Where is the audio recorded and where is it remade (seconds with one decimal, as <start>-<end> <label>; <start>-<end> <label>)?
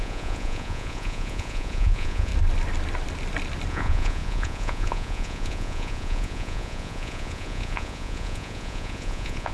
0.0-2.3 remade; 2.3-3.7 recorded; 3.7-9.5 remade